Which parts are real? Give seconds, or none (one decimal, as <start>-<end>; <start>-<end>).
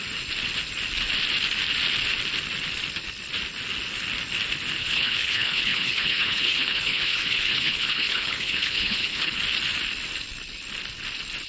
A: 0.0-4.8; 9.4-11.5